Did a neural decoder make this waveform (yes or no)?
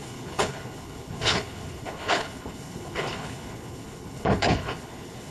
yes